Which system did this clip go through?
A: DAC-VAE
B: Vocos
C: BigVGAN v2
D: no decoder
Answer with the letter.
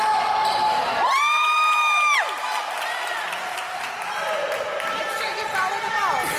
C